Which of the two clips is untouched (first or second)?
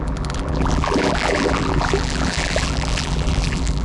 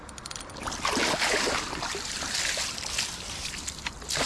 second